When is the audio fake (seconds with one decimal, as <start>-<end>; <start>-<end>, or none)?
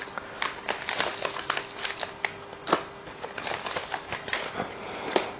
none